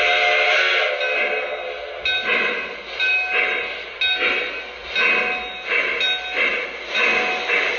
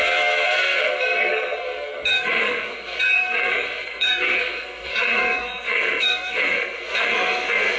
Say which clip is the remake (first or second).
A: second